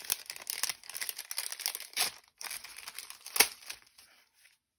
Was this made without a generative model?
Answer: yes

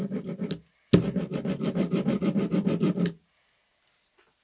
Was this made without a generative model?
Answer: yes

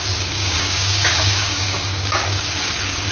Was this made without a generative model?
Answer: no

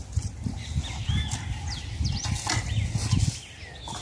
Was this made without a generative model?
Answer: yes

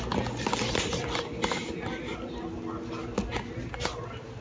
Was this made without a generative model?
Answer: yes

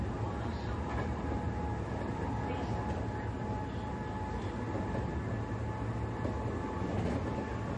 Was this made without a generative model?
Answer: yes